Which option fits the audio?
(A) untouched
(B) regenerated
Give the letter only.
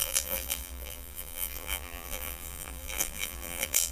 B